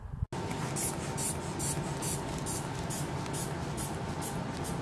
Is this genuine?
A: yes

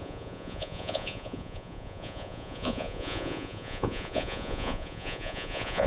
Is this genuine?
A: no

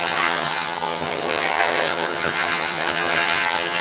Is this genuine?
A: no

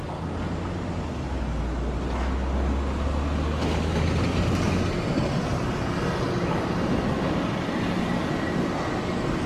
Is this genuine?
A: yes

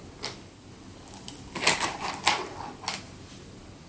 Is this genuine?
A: yes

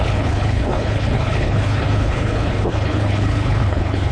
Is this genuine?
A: no